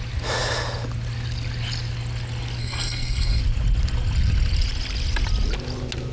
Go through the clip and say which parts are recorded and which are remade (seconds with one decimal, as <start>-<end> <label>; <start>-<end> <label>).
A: 0.0-2.6 recorded; 2.6-3.4 remade; 3.4-6.1 recorded